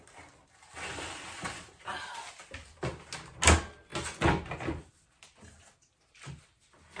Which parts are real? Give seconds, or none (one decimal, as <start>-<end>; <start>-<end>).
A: 0.0-7.0